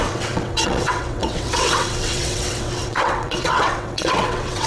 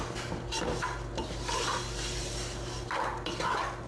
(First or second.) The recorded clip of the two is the second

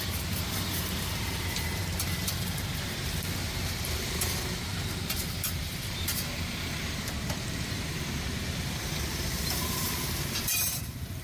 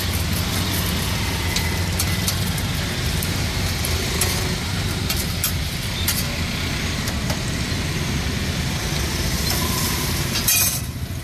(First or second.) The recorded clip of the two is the second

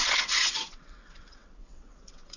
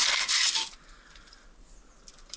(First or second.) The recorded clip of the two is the second